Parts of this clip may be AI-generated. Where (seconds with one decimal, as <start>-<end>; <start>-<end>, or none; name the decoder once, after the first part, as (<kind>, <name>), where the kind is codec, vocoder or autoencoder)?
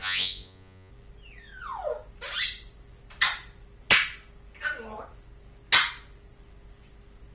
0.0-0.9 (vocoder, Vocos)